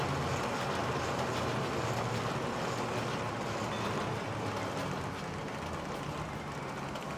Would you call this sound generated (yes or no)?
no